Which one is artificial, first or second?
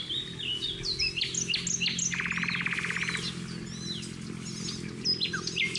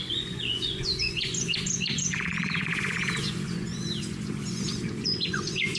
second